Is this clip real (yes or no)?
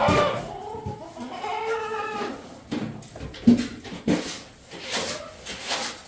yes